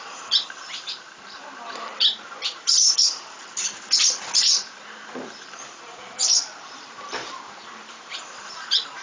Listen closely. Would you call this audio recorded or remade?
remade